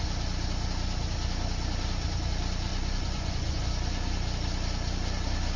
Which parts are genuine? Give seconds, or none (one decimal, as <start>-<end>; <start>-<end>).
0.0-2.7; 3.6-5.6